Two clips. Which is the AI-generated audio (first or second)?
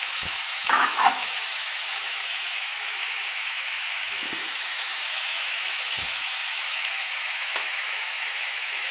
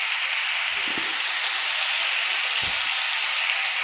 first